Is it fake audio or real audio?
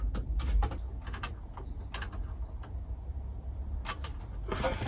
real